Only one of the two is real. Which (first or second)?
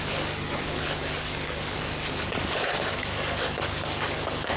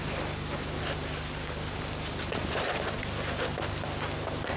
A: second